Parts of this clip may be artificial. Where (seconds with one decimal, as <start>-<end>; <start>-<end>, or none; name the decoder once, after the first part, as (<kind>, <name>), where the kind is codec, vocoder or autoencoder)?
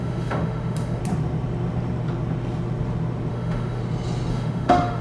0.0-1.0 (autoencoder, DAC-VAE); 3.3-3.8; 4.3-5.0